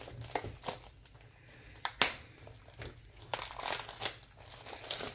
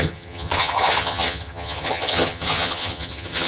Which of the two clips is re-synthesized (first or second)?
second